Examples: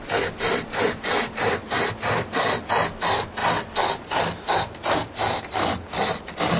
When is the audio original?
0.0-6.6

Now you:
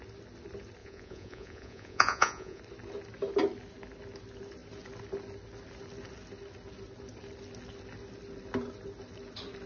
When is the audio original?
0.0-0.8; 2.6-9.7

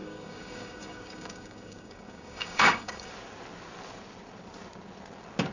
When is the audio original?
3.1-5.5

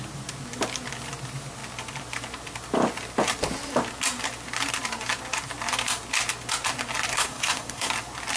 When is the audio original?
0.0-7.1; 7.9-8.4

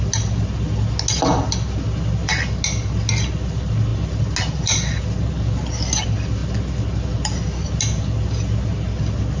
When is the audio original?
0.0-9.4

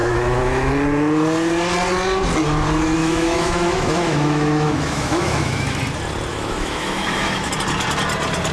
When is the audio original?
0.7-3.0; 5.8-6.3; 7.5-8.5